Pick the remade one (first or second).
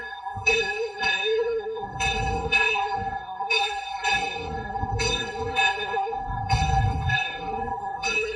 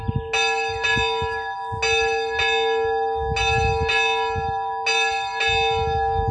first